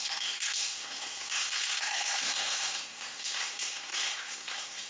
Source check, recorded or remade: remade